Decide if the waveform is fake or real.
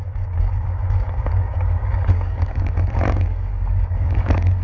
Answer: fake